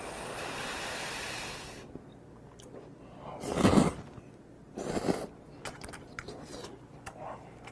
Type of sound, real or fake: real